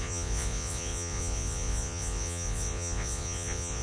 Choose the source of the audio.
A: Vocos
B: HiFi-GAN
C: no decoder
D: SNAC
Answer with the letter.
A